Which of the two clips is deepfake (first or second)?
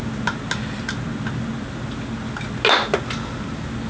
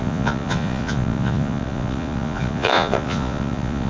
second